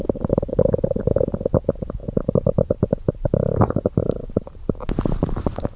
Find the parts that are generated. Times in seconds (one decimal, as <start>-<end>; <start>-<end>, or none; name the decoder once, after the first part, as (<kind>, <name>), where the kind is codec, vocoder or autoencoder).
2.0-5.8 (vocoder, BigVGAN v2)